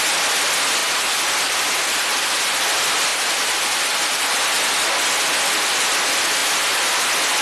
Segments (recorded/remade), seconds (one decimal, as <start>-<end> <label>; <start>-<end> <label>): 0.0-0.8 recorded; 0.8-2.6 remade; 2.6-3.1 recorded; 3.1-4.3 remade; 4.3-7.4 recorded